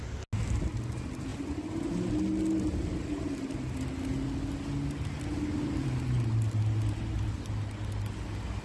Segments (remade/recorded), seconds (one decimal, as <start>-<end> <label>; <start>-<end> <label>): 0.0-8.6 recorded